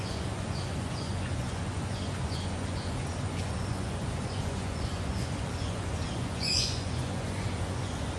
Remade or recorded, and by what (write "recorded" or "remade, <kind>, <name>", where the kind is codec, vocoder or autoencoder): remade, vocoder, Vocos